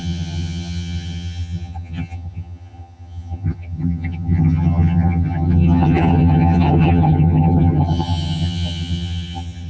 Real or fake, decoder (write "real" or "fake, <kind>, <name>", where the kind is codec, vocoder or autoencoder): fake, vocoder, HiFi-GAN